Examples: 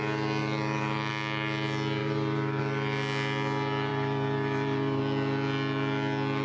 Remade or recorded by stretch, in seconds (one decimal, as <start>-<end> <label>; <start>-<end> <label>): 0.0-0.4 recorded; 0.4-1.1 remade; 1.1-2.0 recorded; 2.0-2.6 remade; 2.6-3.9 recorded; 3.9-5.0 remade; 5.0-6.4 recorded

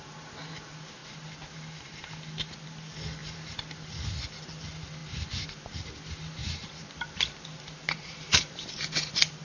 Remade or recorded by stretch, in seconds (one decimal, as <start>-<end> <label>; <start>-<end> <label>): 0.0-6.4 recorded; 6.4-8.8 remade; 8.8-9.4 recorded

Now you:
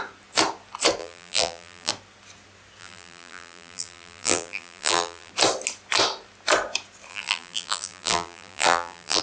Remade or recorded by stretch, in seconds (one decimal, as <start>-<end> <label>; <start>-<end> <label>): 0.0-1.0 recorded; 1.0-1.9 remade; 1.9-2.8 recorded; 2.8-5.3 remade; 5.3-7.1 recorded; 7.1-9.2 remade

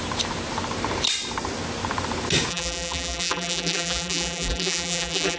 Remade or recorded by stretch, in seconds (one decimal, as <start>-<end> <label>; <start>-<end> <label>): 0.0-2.5 recorded; 2.5-5.4 remade

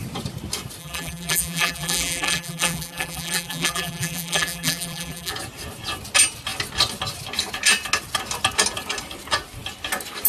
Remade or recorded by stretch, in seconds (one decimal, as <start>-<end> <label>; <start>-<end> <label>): 0.0-0.8 recorded; 0.8-5.3 remade; 5.3-10.3 recorded

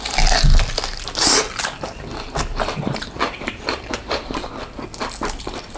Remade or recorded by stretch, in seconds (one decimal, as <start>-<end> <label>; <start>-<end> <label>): 0.0-2.5 recorded; 2.5-4.5 remade; 4.5-5.8 recorded